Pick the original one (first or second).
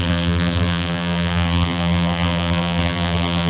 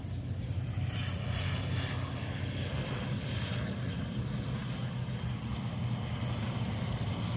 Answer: second